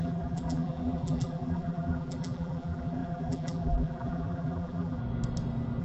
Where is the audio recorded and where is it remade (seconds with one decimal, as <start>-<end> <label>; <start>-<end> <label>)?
0.0-5.0 remade; 5.0-5.8 recorded